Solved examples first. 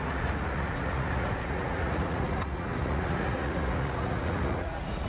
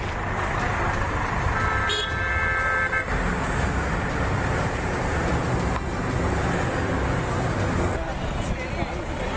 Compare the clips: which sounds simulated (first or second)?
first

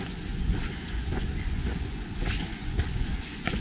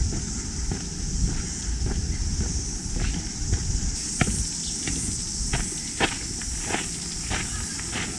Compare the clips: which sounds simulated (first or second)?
first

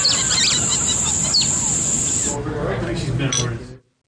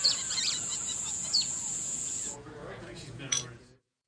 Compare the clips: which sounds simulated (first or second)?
second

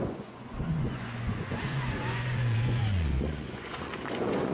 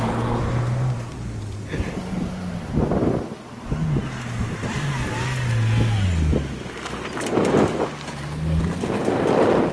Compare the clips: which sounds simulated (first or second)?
first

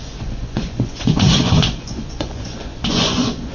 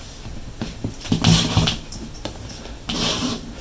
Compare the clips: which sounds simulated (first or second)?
first